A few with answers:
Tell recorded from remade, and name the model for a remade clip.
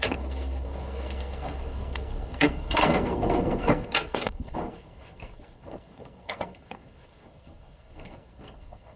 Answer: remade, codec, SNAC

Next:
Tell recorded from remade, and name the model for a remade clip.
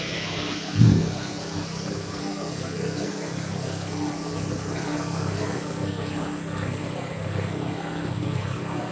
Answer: remade, codec, SNAC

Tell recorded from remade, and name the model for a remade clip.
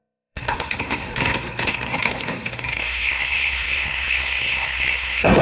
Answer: remade, codec, SNAC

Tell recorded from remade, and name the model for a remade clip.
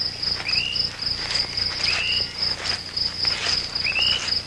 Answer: recorded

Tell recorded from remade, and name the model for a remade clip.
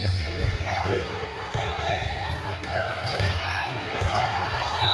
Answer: remade, codec, SNAC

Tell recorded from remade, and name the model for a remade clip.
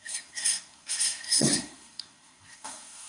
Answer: remade, codec, SNAC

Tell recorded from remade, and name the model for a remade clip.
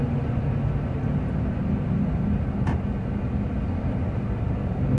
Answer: recorded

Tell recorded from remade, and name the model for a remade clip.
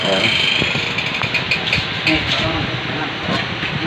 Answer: recorded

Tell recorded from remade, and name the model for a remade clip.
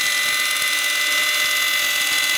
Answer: recorded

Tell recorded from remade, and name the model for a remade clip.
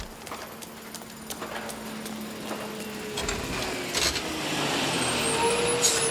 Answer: recorded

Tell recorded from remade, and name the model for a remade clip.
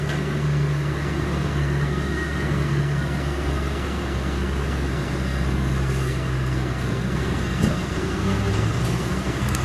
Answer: remade, codec, SNAC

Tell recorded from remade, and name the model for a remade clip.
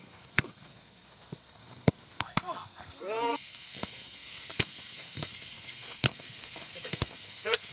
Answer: remade, codec, SNAC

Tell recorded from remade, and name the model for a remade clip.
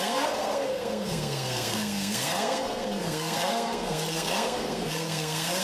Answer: remade, codec, SNAC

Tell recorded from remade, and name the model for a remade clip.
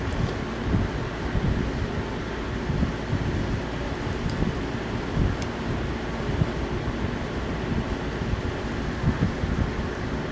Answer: recorded